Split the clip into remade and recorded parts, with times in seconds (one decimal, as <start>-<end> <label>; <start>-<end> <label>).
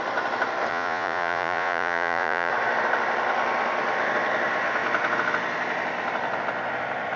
0.0-0.7 recorded; 0.7-2.5 remade; 2.5-7.2 recorded